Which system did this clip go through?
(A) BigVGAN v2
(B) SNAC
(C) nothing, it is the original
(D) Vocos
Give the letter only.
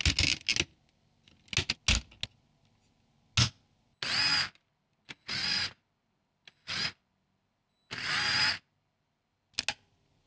C